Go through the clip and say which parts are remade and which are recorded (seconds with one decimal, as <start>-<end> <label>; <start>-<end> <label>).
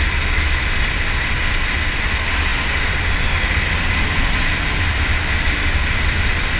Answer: 0.0-6.6 recorded